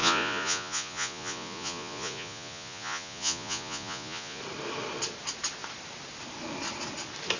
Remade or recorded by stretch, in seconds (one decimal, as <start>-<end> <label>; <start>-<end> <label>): 0.0-4.4 remade; 4.4-7.4 recorded

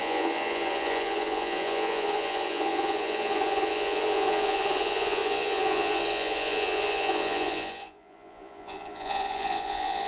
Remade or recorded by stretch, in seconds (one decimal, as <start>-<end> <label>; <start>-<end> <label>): 0.0-10.1 remade

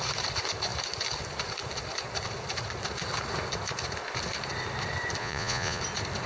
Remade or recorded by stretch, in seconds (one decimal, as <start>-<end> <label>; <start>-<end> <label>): 0.0-5.2 recorded; 5.2-5.8 remade; 5.8-6.3 recorded

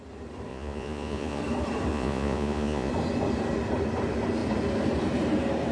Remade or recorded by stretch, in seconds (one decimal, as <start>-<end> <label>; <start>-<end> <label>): 0.0-0.5 recorded; 0.5-1.4 remade; 1.4-1.9 recorded; 1.9-2.9 remade; 2.9-5.7 recorded

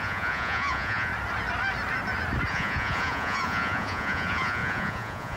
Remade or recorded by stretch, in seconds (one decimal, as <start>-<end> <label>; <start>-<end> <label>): 0.0-1.1 remade; 1.1-2.5 recorded; 2.5-5.4 remade

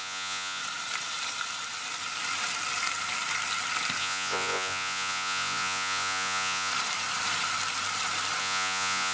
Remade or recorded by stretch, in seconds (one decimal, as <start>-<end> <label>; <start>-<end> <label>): 0.0-0.6 remade; 0.6-4.0 recorded; 4.0-6.7 remade; 6.7-8.4 recorded; 8.4-9.1 remade

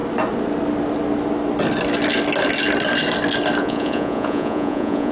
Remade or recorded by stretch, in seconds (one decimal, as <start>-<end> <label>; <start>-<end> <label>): 0.0-3.6 recorded; 3.6-5.1 remade